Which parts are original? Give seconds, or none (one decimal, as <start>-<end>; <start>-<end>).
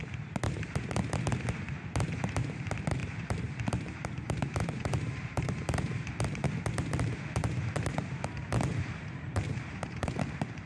0.0-3.0; 6.1-8.7; 10.2-10.7